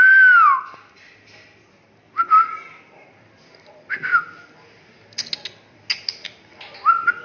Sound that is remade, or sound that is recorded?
recorded